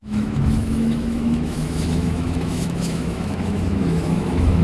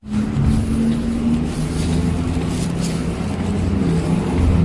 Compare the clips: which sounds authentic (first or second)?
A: second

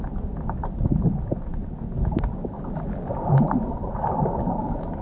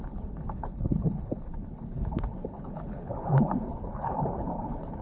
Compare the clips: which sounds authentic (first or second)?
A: first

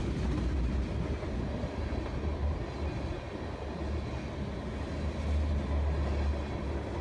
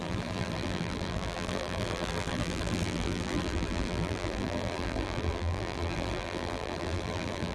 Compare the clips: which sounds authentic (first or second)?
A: first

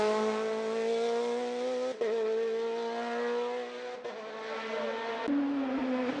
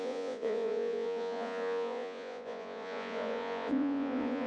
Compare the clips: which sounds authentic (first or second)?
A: first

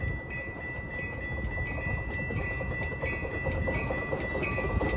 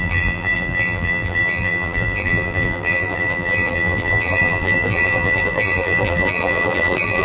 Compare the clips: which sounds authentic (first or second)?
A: first